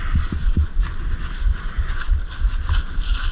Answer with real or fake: real